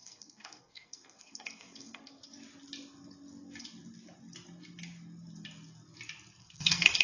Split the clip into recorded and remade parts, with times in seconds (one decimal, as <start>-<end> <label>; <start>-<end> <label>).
0.0-2.2 remade; 2.2-6.4 recorded; 6.4-7.0 remade

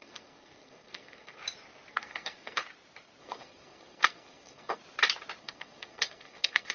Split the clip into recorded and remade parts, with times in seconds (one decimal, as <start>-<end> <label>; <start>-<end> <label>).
0.0-1.4 remade; 1.4-1.9 recorded; 1.9-2.6 remade; 2.6-3.2 recorded; 3.2-4.8 remade; 4.8-5.4 recorded; 5.4-6.7 remade

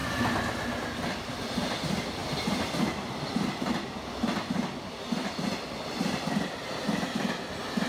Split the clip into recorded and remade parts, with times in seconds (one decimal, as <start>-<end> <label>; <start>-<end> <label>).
0.0-7.9 recorded

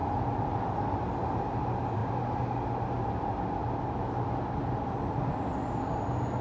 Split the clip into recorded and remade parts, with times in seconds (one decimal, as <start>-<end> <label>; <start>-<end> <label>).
0.0-6.4 recorded

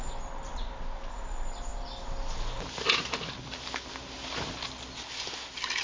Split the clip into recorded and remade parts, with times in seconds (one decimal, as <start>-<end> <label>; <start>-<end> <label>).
0.0-5.8 recorded

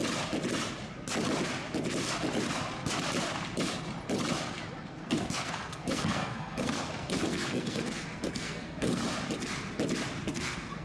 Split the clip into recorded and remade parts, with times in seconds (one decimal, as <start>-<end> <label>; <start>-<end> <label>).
0.0-4.8 recorded; 4.8-9.0 remade; 9.0-10.3 recorded; 10.3-10.8 remade